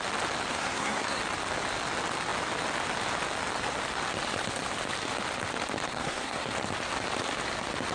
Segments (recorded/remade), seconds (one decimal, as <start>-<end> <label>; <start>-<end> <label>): 0.0-0.5 recorded; 0.5-1.2 remade; 1.2-5.9 recorded; 5.9-6.5 remade; 6.5-7.9 recorded

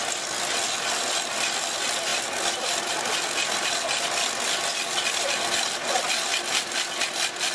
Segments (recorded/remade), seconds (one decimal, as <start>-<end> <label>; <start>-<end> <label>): 0.0-7.5 recorded

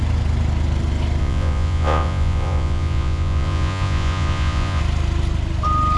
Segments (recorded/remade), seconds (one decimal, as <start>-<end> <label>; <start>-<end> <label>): 0.0-1.2 recorded; 1.2-4.8 remade; 4.8-6.0 recorded

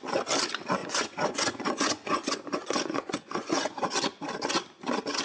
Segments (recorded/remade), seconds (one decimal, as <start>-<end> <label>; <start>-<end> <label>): 0.0-0.8 recorded; 0.8-3.9 remade; 3.9-5.2 recorded

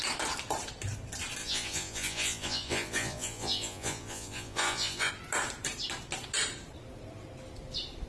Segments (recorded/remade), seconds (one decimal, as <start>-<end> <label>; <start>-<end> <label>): 0.0-1.4 recorded; 1.4-5.1 remade; 5.1-8.1 recorded

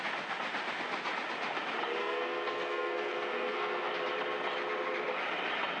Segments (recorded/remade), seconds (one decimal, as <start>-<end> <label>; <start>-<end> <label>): 0.0-2.0 recorded; 2.0-3.9 remade; 3.9-5.8 recorded